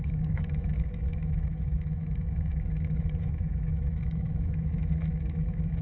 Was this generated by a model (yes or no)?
yes